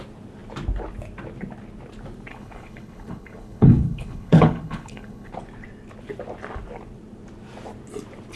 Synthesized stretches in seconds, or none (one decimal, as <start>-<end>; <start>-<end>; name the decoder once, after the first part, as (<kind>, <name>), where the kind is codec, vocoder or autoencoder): 2.3-5.3 (codec, HILCodec)